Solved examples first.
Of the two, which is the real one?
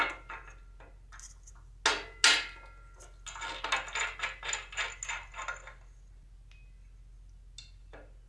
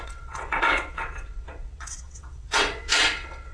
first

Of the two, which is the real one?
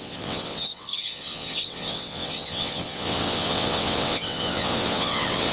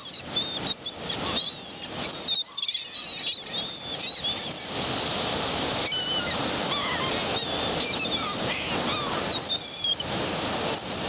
second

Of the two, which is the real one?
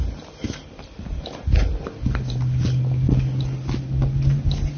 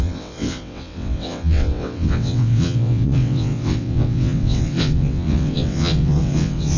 first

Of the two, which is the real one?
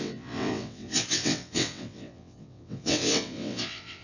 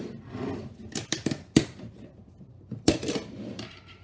second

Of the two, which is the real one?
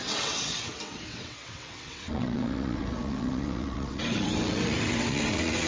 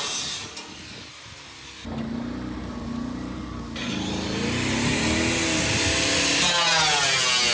second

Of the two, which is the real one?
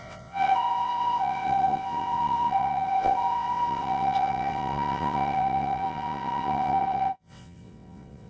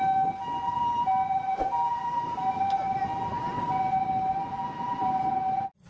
second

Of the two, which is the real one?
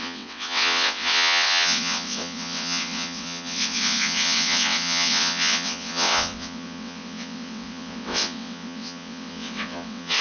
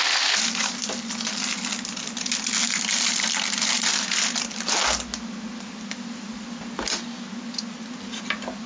second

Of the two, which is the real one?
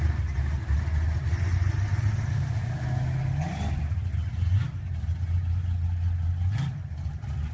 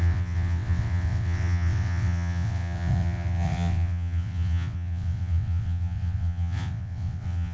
first